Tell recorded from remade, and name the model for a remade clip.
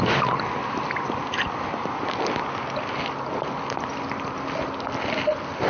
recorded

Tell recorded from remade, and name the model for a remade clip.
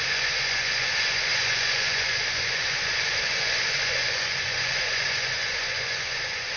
remade, vocoder, Vocos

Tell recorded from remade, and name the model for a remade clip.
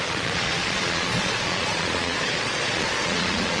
remade, vocoder, Vocos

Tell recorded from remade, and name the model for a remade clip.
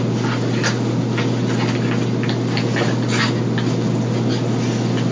recorded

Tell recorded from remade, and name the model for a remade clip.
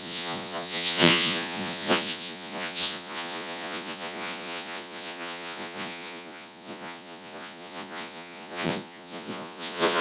remade, vocoder, Vocos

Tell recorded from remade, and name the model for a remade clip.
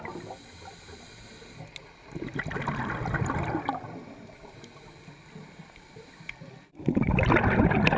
recorded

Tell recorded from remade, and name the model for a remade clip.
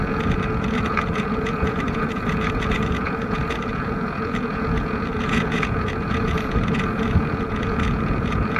remade, vocoder, Vocos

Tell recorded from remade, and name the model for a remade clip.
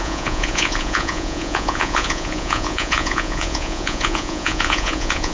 remade, vocoder, Vocos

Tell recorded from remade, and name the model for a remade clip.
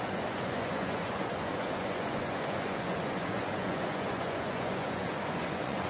remade, vocoder, Vocos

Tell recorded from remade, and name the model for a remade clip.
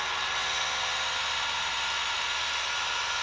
recorded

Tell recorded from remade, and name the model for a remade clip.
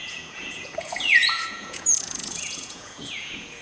remade, vocoder, Vocos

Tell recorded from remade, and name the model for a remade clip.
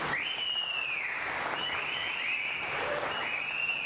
recorded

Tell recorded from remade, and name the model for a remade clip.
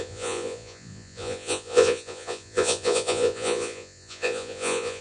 remade, vocoder, Vocos